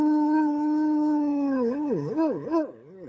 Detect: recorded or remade remade